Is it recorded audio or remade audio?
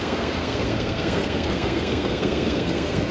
remade